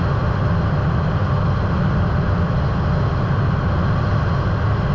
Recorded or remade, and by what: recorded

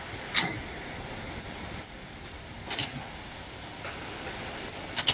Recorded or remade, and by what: recorded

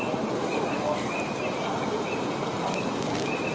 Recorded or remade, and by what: recorded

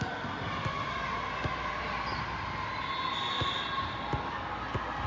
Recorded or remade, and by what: recorded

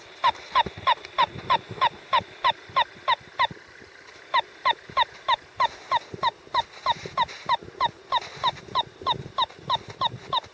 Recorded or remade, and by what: recorded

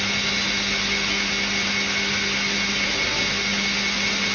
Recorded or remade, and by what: recorded